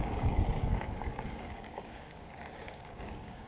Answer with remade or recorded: remade